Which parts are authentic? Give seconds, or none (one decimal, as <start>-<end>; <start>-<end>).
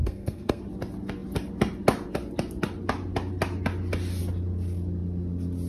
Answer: 0.6-5.7